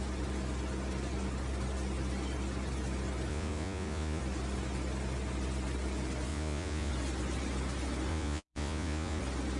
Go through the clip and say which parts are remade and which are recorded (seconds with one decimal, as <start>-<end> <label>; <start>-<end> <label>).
0.0-3.3 recorded; 3.3-4.2 remade; 4.2-6.3 recorded; 6.3-6.9 remade; 6.9-8.1 recorded; 8.1-9.2 remade; 9.2-9.6 recorded

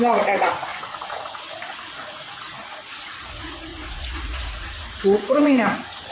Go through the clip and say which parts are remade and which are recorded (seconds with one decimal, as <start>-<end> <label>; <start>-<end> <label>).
0.0-6.1 remade

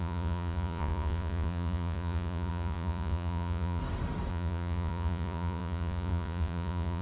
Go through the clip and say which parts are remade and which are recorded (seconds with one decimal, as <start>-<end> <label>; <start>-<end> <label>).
0.0-3.8 remade; 3.8-4.3 recorded; 4.3-7.0 remade

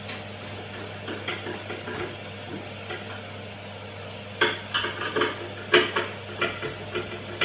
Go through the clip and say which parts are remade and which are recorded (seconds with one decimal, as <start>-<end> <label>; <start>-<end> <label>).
0.0-7.4 recorded

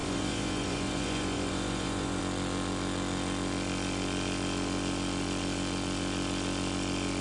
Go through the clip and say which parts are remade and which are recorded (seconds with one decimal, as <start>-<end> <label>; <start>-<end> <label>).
0.0-2.2 remade; 2.2-7.2 recorded

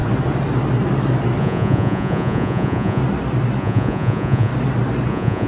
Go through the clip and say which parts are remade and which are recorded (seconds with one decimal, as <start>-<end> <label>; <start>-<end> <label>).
0.0-1.4 recorded; 1.4-3.0 remade; 3.0-3.6 recorded; 3.6-4.5 remade; 4.5-5.1 recorded; 5.1-5.5 remade